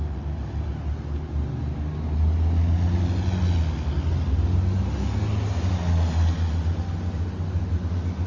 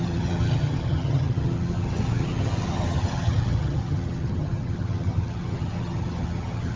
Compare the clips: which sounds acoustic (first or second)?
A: first